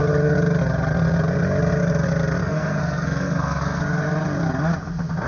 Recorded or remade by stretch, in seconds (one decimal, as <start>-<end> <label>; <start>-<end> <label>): 0.0-2.4 recorded; 2.4-3.8 remade; 3.8-5.3 recorded